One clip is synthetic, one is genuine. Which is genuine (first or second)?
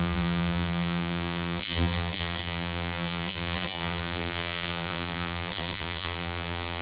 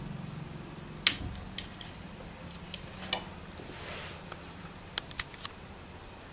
second